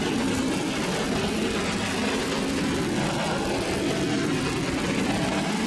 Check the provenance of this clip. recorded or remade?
recorded